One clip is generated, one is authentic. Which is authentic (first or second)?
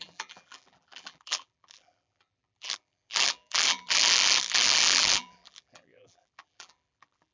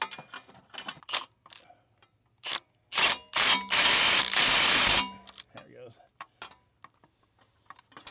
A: second